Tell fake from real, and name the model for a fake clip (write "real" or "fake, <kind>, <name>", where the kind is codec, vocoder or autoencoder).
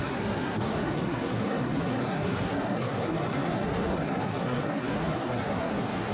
fake, codec, SNAC